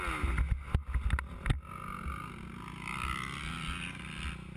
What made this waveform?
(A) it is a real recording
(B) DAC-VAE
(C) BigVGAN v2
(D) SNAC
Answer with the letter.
A